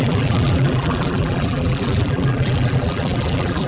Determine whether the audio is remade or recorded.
remade